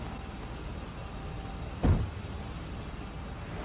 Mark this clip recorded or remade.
recorded